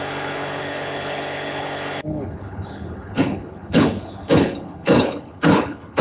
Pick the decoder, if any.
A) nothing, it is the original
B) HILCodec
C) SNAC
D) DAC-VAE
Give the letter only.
B